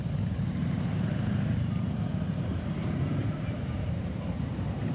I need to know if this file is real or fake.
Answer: fake